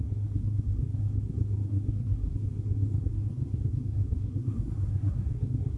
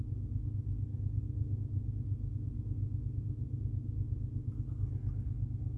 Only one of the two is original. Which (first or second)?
second